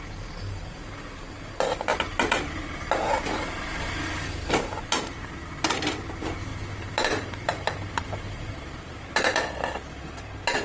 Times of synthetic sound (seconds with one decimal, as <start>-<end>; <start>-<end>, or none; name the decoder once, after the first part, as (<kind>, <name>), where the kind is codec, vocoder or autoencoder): none